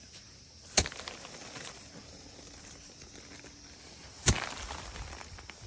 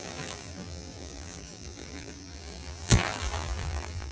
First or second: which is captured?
first